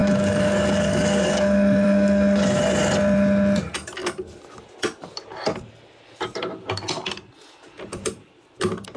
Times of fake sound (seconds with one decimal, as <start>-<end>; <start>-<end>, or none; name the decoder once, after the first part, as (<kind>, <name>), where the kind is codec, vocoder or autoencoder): 0.0-2.6 (codec, DAC)